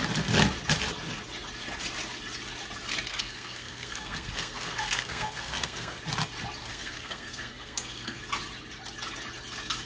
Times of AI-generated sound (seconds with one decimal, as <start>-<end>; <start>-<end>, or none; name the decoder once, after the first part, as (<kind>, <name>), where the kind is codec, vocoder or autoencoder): 3.1-6.0 (codec, SNAC); 6.6-8.2

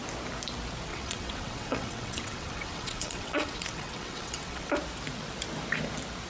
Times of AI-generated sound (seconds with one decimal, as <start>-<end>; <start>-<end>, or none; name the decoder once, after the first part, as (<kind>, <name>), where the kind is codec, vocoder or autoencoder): 0.9-4.7 (vocoder, WaveNeXt)

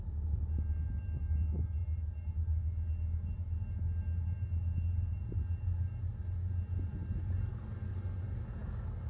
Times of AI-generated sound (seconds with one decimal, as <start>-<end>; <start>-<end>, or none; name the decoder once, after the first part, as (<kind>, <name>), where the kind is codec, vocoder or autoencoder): none

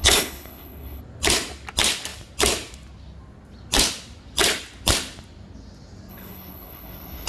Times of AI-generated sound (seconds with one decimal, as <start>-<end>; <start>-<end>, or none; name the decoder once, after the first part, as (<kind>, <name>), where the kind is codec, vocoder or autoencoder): 0.0-1.0 (codec, HILCodec); 6.1-7.3

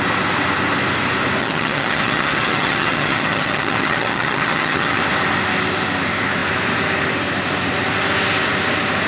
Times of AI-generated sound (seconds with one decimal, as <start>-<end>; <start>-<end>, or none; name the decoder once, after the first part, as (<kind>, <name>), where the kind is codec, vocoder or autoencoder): 1.4-5.0 (vocoder, HiFi-GAN)